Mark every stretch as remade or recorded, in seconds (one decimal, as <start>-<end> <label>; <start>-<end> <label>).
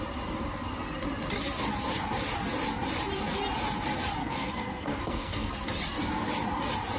0.0-4.2 recorded; 4.2-5.5 remade; 5.5-7.0 recorded